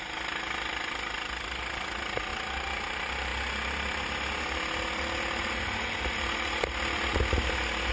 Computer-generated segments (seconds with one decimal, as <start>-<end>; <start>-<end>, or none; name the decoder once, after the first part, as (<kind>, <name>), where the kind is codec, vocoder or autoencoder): none